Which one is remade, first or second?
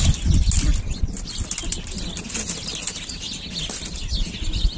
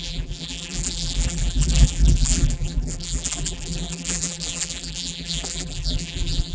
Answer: second